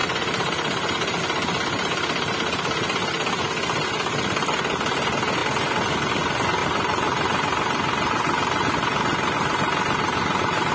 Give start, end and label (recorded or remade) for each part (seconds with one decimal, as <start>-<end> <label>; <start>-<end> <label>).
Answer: 0.0-1.2 remade; 1.2-6.6 recorded; 6.6-10.7 remade